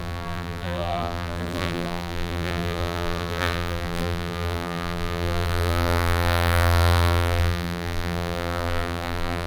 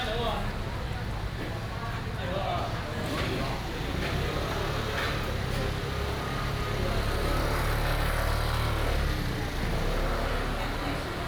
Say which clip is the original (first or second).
second